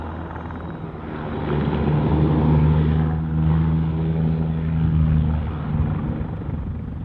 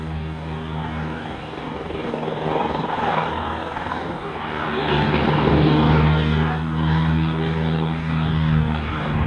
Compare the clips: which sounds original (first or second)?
first